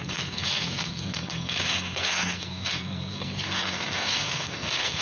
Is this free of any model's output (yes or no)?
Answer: no